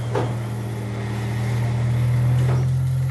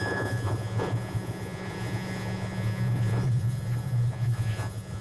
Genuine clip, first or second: first